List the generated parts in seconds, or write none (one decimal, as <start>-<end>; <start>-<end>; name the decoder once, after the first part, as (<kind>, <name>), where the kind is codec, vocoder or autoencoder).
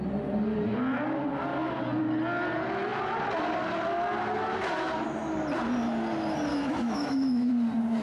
6.5-7.5 (autoencoder, DAC-VAE)